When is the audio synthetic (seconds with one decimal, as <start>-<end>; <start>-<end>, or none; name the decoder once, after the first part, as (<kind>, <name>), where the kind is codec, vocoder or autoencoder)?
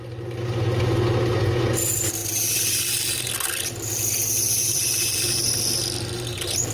2.2-3.3 (vocoder, BigVGAN v2); 4.6-5.5